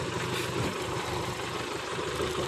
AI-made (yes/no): no